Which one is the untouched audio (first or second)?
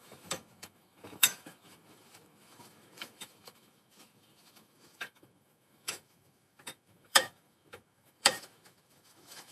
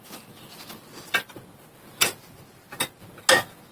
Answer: second